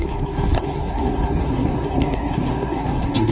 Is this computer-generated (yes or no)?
yes